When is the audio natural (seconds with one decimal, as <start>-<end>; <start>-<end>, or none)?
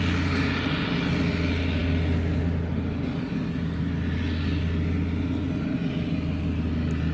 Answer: 0.0-7.1